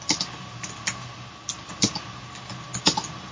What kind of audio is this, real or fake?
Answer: real